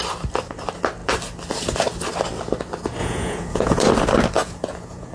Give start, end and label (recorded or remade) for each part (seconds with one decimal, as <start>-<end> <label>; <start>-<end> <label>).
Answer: 0.0-3.0 recorded; 3.0-3.8 remade; 3.8-4.4 recorded; 4.4-5.1 remade